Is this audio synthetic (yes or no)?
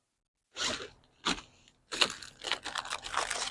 no